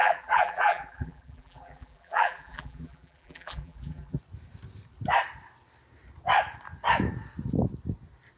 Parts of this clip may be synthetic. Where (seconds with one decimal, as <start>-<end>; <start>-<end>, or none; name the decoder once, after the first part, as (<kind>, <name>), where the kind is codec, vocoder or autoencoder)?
0.0-4.2 (vocoder, BigVGAN v2)